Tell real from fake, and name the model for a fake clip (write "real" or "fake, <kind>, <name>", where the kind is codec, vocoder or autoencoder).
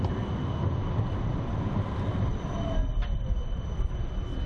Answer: real